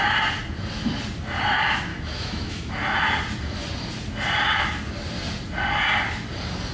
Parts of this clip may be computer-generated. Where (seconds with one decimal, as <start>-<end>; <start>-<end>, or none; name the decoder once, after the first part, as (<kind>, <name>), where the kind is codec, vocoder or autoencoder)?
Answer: 1.9-2.7 (autoencoder, DAC-VAE)